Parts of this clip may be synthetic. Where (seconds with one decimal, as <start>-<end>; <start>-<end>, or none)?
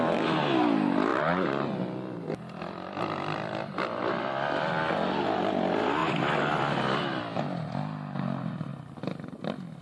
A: 1.1-4.2; 6.0-7.4